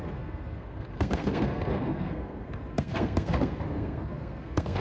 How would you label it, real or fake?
fake